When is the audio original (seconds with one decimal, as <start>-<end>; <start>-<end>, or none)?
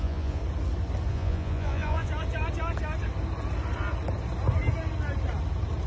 0.4-1.1; 2.1-5.9